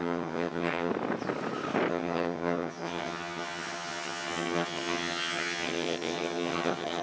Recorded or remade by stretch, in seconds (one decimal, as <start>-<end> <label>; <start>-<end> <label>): 0.0-0.9 remade; 0.9-1.9 recorded; 1.9-7.0 remade